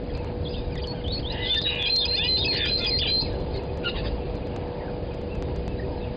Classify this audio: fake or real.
real